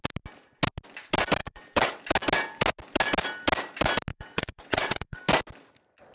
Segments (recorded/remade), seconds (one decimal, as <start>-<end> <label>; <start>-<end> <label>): 0.0-1.4 recorded; 1.4-2.0 remade; 2.0-4.1 recorded; 4.1-5.2 remade; 5.2-6.1 recorded